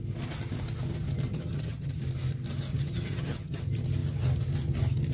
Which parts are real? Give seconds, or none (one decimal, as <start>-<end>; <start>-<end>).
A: 0.0-1.3; 2.0-2.7; 3.6-5.1

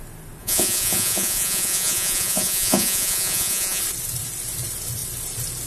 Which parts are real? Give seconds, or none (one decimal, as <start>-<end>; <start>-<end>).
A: 0.0-0.4; 3.8-5.7